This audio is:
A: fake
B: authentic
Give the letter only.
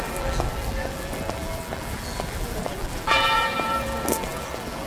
A